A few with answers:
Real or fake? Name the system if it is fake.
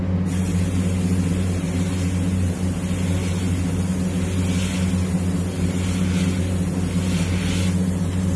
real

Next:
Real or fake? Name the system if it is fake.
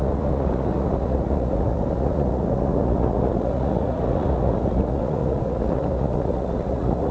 fake, vocoder, Vocos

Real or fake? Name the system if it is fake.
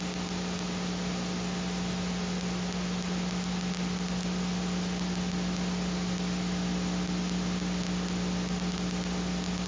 real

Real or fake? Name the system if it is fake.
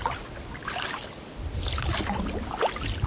real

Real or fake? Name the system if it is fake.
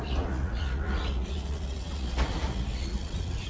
fake, vocoder, Vocos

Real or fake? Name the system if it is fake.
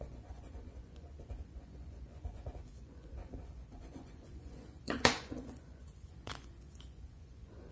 fake, vocoder, Vocos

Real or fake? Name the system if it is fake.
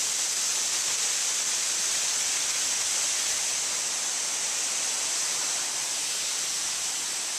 real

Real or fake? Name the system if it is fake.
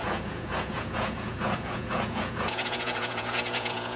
fake, vocoder, Vocos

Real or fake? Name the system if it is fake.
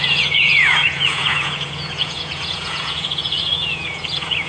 fake, vocoder, Vocos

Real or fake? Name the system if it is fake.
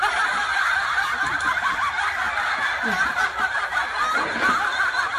real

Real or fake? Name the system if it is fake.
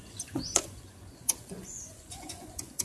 fake, vocoder, Vocos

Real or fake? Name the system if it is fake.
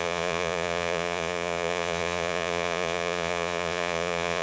fake, vocoder, Vocos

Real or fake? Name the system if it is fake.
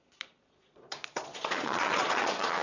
fake, vocoder, Vocos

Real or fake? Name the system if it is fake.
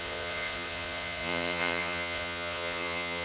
fake, vocoder, Vocos